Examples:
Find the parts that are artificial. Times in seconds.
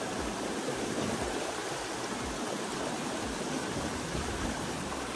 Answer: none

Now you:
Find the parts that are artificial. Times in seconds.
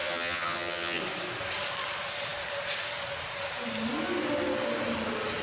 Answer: 0.0-1.0 (vocoder, HiFi-GAN)